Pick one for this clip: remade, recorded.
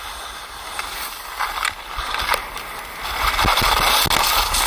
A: recorded